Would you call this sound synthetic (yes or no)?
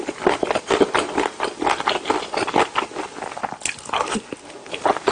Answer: no